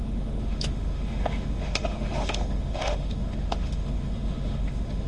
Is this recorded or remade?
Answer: remade